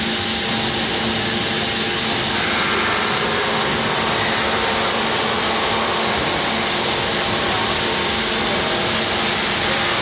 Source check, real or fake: real